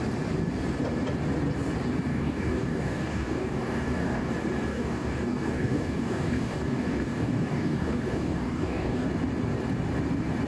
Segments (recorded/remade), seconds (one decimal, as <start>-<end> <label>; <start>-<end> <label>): 0.0-2.1 recorded; 2.1-4.3 remade; 4.3-4.7 recorded; 4.7-9.1 remade; 9.1-10.5 recorded